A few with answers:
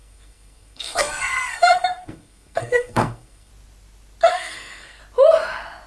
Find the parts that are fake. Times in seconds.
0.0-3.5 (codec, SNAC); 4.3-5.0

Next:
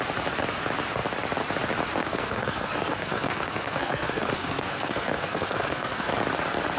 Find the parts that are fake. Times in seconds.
2.0-6.1 (codec, SNAC)

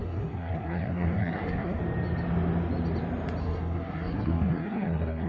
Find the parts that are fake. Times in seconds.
0.0-1.8 (codec, SNAC); 3.4-5.3

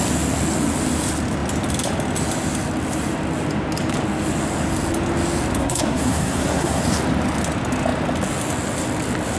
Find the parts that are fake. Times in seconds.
5.6-6.8 (codec, SNAC)

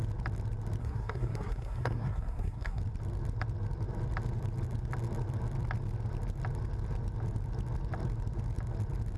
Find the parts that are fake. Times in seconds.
0.8-2.8 (codec, SNAC)

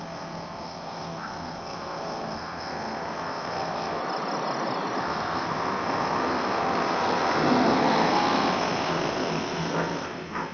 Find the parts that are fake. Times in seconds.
0.0-4.0 (codec, SNAC); 5.0-10.5

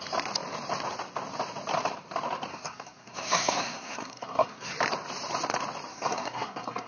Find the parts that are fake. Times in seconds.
2.5-4.7 (codec, SNAC); 5.9-6.9

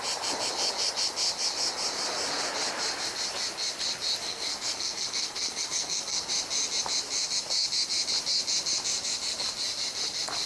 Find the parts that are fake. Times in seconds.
4.2-6.3 (codec, SNAC)